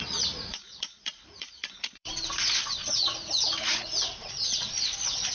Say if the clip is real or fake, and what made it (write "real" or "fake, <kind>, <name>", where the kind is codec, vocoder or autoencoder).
fake, vocoder, Vocos